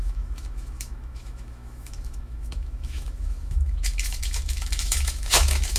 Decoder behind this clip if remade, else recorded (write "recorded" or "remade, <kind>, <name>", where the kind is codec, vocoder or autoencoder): remade, autoencoder, DAC-VAE